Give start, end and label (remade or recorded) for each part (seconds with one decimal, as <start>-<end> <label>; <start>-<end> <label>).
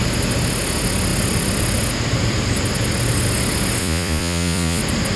0.0-3.8 recorded; 3.8-4.8 remade; 4.8-5.2 recorded